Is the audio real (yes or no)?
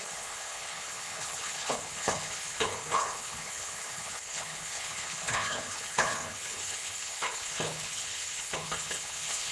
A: no